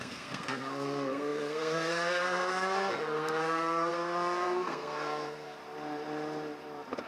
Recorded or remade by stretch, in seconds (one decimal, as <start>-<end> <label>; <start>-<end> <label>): 0.0-5.6 remade; 5.6-7.1 recorded